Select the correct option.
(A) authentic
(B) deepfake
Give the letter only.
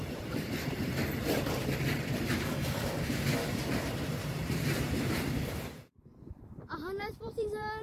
B